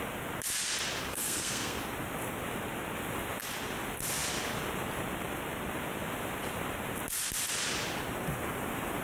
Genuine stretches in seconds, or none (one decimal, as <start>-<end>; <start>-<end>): 0.0-1.1; 1.8-9.0